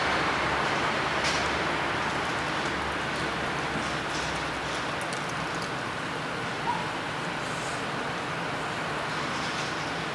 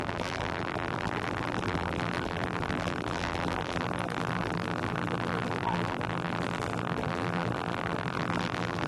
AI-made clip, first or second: second